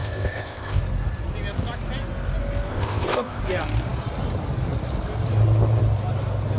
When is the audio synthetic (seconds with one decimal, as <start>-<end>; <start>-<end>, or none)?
0.0-0.8; 2.7-3.4